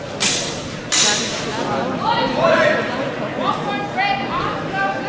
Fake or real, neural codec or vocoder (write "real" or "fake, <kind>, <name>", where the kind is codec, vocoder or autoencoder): real